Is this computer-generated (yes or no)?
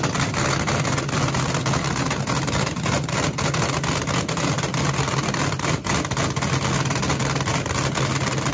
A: no